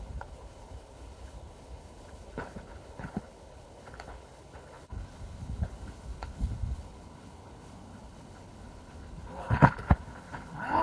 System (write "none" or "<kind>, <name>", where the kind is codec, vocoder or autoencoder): codec, HILCodec